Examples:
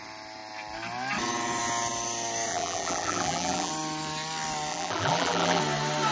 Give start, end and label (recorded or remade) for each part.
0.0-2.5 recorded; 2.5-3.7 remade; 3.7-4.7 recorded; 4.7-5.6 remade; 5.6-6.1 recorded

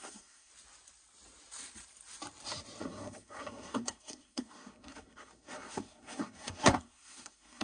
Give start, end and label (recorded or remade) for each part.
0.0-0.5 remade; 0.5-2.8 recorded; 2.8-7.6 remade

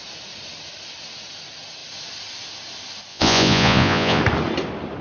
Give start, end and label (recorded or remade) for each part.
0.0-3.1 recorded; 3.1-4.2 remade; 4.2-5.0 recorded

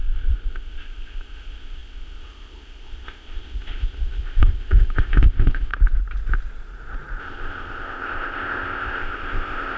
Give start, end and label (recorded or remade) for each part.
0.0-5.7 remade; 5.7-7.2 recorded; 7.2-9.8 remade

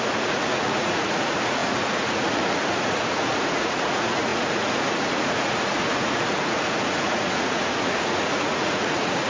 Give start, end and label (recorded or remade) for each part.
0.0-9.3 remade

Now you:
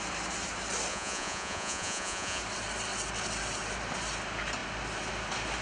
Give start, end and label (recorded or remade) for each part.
0.0-0.9 recorded; 0.9-2.4 remade; 2.4-5.6 recorded

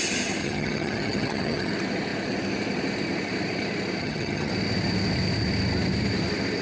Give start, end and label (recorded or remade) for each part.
0.0-0.4 recorded; 0.4-1.7 remade; 1.7-4.0 recorded; 4.0-4.5 remade; 4.5-6.6 recorded